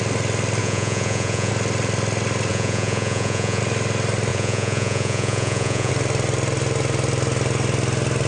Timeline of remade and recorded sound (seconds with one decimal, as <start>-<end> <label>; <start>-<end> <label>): 0.0-0.6 recorded; 0.6-1.5 remade; 1.5-2.5 recorded; 2.5-3.6 remade; 3.6-4.3 recorded; 4.3-5.9 remade; 5.9-8.3 recorded